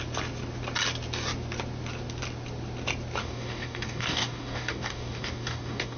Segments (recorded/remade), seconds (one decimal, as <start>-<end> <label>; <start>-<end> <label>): 0.0-3.2 recorded; 3.2-6.0 remade

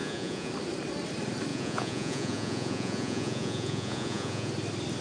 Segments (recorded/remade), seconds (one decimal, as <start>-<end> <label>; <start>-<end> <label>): 0.0-0.5 remade; 0.5-1.5 recorded; 1.5-4.5 remade; 4.5-5.0 recorded